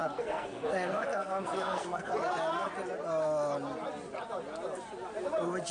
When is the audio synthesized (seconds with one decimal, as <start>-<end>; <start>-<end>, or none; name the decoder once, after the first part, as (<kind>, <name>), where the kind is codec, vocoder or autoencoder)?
0.0-2.1 (codec, SNAC)